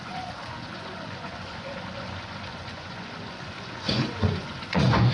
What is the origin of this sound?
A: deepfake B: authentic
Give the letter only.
A